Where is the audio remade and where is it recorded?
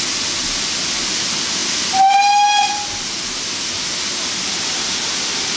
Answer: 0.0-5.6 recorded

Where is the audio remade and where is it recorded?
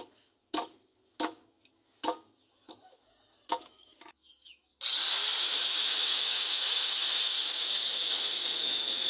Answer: 0.0-4.7 remade; 4.7-5.4 recorded; 5.4-9.1 remade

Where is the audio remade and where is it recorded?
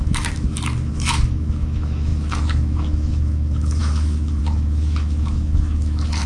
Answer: 0.0-6.3 remade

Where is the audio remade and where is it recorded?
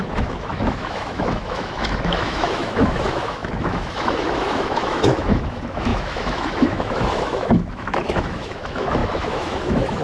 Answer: 0.0-10.0 remade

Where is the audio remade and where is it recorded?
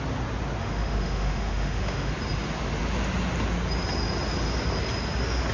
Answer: 0.0-0.6 recorded; 0.6-2.1 remade; 2.1-5.5 recorded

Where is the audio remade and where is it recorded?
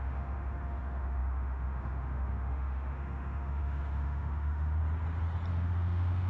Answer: 0.0-4.8 remade; 4.8-5.5 recorded; 5.5-6.3 remade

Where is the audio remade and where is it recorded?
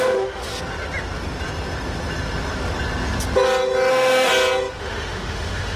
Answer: 0.0-0.5 remade; 0.5-3.9 recorded; 3.9-4.3 remade; 4.3-4.8 recorded; 4.8-5.8 remade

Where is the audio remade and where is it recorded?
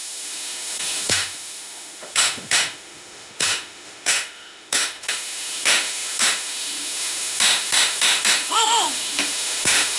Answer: 0.0-10.0 remade